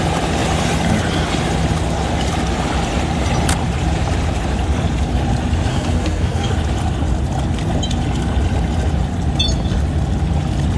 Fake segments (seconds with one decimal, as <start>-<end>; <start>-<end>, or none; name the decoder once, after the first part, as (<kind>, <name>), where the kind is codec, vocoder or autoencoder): 5.7-6.5 (codec, SNAC)